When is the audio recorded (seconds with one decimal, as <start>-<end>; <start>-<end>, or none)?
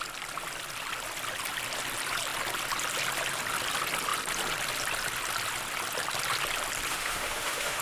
0.0-6.9